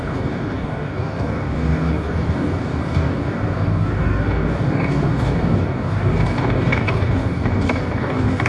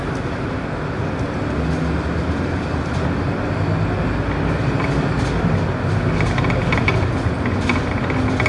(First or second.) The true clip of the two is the second